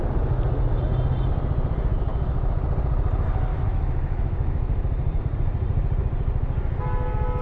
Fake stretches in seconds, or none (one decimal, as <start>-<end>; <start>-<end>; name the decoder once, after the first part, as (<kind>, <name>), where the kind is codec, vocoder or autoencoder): 2.1-2.6 (autoencoder, DAC-VAE); 3.5-5.2